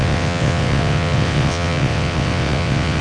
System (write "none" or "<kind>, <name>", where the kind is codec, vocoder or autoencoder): vocoder, WaveNeXt